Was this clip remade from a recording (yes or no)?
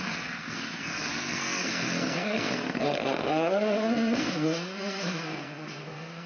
yes